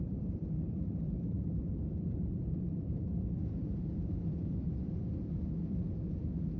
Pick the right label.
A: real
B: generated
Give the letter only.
B